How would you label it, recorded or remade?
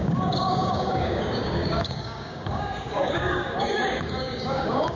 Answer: remade